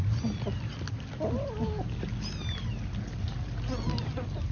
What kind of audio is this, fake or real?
real